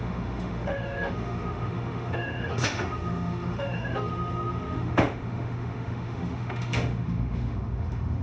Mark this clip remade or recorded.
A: remade